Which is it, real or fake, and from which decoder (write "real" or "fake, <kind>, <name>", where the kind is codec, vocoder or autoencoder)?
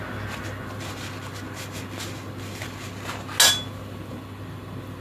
real